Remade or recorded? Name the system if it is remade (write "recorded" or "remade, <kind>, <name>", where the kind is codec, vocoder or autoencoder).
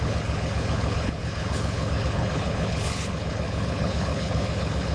remade, codec, HILCodec